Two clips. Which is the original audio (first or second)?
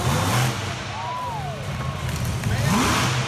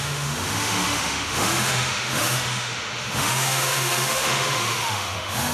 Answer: first